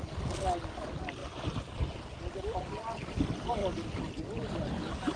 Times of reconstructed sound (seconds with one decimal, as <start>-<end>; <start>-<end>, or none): none

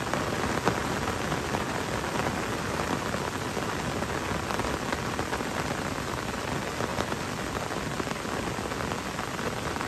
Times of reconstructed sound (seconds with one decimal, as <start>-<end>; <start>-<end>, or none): none

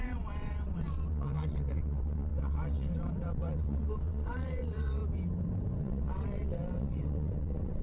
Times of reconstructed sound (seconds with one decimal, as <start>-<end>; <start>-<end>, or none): 0.0-5.0; 5.8-7.8

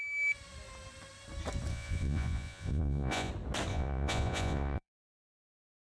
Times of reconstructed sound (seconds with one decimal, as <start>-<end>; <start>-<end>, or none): 1.7-3.3; 3.7-6.0